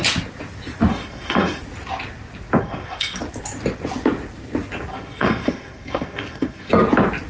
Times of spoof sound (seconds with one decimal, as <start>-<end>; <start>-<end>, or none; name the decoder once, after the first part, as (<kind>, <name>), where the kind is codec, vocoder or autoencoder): 0.9-1.6 (codec, SNAC); 2.6-3.2; 4.9-6.7